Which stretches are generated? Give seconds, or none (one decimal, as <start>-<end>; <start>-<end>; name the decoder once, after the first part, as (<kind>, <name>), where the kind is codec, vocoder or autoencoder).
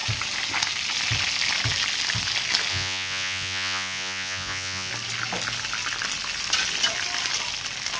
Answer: 2.7-4.9 (vocoder, Vocos)